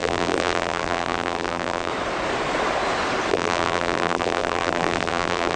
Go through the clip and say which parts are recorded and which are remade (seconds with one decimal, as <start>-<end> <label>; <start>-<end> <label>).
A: 0.0-1.9 remade; 1.9-3.3 recorded; 3.3-5.6 remade